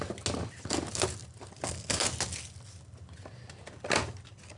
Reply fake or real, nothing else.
real